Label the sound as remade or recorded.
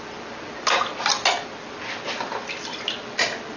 recorded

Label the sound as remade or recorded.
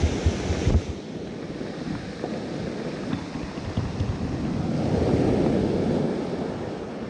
recorded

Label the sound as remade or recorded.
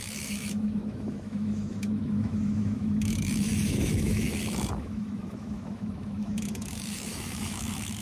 remade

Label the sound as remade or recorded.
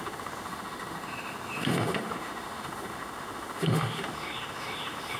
remade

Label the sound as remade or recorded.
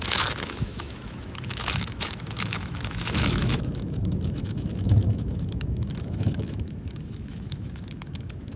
remade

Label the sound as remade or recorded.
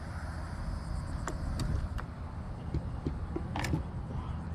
recorded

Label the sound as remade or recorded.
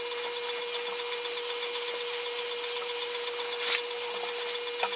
recorded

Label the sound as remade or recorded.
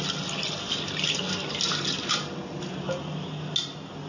recorded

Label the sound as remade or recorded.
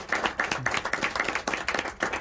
recorded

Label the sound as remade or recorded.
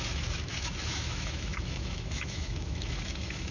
remade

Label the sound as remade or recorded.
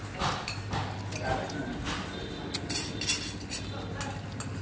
recorded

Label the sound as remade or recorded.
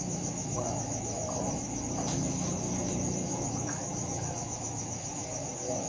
remade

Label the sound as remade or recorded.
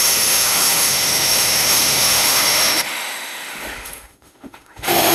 remade